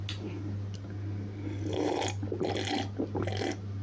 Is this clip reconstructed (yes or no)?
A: no